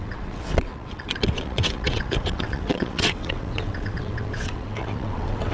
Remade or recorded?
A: remade